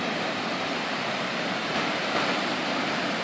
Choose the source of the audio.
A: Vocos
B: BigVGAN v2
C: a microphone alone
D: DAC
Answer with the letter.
B